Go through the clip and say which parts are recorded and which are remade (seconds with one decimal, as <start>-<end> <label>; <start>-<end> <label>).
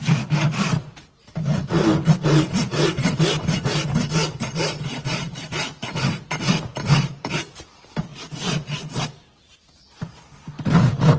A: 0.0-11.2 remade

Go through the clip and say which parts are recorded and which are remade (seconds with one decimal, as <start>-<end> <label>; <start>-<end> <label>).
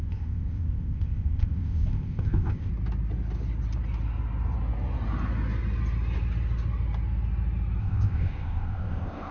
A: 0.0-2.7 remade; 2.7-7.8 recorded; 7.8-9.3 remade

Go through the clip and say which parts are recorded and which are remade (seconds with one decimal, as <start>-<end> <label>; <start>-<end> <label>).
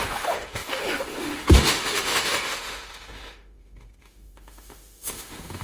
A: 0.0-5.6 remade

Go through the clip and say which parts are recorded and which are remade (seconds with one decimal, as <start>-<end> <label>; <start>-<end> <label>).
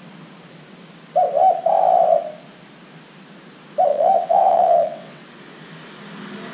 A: 0.0-3.9 recorded; 3.9-5.2 remade; 5.2-6.5 recorded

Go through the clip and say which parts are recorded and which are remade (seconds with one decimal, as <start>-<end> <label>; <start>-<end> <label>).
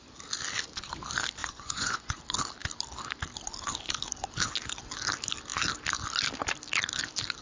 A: 0.0-1.4 recorded; 1.4-2.2 remade; 2.2-7.4 recorded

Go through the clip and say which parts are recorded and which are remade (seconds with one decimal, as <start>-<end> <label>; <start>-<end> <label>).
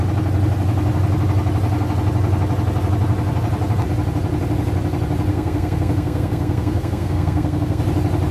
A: 0.0-5.3 recorded; 5.3-7.8 remade; 7.8-8.3 recorded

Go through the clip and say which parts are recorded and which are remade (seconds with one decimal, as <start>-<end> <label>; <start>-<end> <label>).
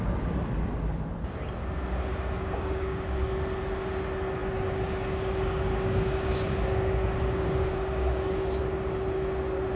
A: 0.0-1.6 recorded; 1.6-3.2 remade; 3.2-4.4 recorded; 4.4-8.6 remade; 8.6-9.8 recorded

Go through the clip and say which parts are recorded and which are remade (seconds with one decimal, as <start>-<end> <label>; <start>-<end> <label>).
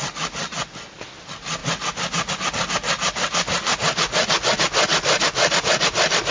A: 0.0-6.3 recorded